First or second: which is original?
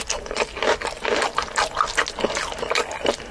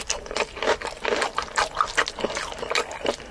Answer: first